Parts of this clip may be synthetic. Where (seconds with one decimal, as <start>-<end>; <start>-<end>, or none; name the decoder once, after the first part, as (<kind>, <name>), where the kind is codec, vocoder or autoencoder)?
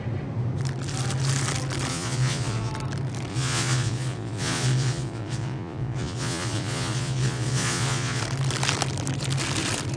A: 1.9-2.7 (vocoder, Vocos); 3.3-8.2